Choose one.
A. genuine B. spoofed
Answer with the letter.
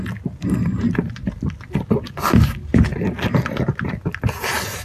A